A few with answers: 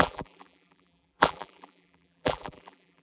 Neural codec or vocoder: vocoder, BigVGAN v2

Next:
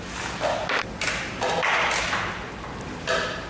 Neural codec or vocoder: none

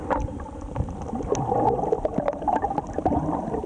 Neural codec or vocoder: none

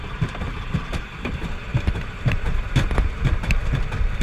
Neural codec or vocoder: vocoder, BigVGAN v2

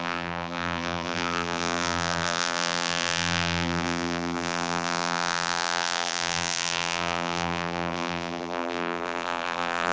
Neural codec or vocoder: vocoder, BigVGAN v2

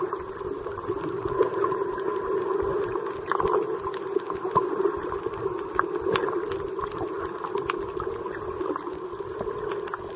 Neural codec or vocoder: none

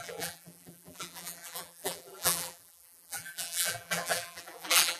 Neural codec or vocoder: vocoder, BigVGAN v2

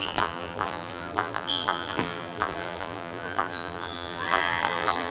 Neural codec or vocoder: vocoder, BigVGAN v2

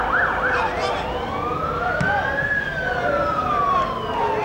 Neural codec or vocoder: none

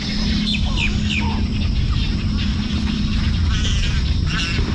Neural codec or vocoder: none